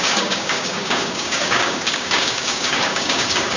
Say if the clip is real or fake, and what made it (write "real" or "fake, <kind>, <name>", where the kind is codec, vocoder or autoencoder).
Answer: fake, codec, DAC